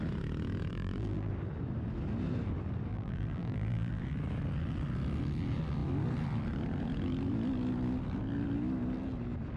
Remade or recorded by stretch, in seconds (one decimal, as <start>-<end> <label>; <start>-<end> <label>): 0.0-0.7 recorded; 0.7-1.3 remade; 1.3-2.9 recorded; 2.9-4.0 remade; 4.0-9.6 recorded